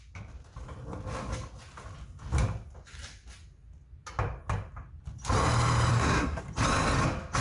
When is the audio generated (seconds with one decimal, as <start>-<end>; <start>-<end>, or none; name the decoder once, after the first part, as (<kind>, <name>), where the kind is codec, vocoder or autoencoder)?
5.9-6.4 (codec, SNAC)